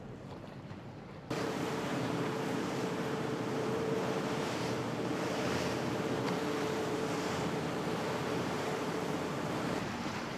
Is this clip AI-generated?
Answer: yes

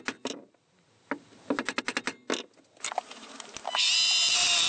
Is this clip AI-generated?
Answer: no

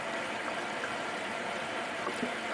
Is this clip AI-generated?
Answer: no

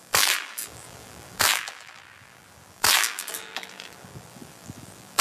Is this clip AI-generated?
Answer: yes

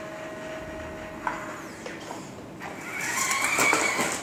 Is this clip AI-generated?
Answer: no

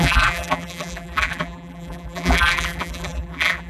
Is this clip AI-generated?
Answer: yes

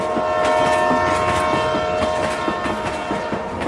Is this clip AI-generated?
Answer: no